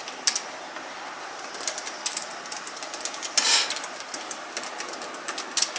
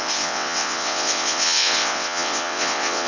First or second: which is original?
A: first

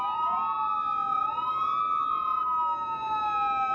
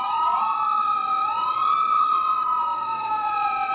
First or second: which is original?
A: first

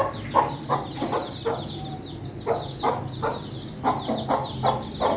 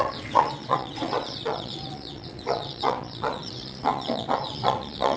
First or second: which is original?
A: first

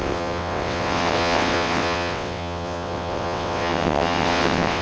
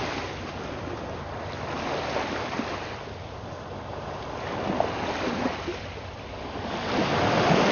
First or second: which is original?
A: second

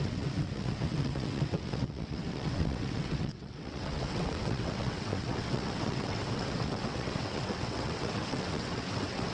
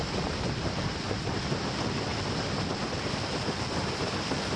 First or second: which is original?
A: second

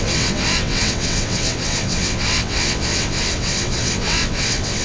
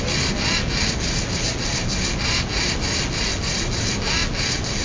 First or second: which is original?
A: second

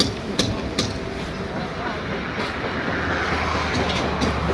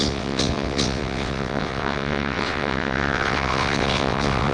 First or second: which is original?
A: first